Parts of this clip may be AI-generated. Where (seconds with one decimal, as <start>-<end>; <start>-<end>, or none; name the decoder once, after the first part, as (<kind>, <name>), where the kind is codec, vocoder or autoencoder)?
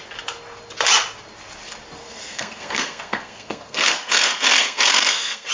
2.0-5.5 (codec, SNAC)